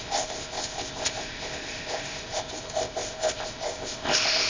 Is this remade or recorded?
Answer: remade